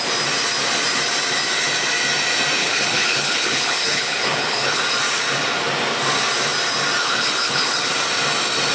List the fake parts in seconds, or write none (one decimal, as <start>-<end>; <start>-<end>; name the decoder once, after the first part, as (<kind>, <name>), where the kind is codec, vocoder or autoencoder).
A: 2.6-4.8 (codec, HILCodec); 7.0-7.9